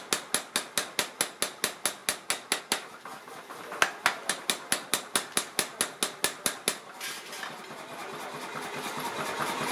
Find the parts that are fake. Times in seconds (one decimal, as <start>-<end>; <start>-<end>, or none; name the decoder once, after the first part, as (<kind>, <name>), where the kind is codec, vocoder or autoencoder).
none